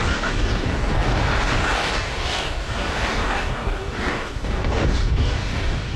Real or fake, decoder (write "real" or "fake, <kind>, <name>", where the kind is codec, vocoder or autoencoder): fake, codec, DAC